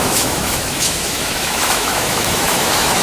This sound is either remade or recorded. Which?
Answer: remade